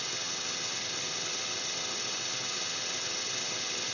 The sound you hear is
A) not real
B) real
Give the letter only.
A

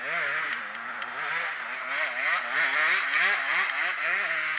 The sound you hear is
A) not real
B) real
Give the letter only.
B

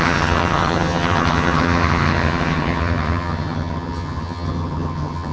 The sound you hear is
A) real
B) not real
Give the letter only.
B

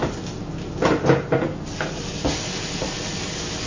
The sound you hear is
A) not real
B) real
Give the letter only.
B